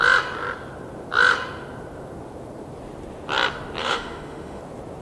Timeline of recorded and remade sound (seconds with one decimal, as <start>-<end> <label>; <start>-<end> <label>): 0.0-3.8 recorded; 3.8-4.6 remade; 4.6-5.0 recorded